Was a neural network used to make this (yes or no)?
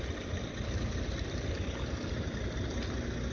no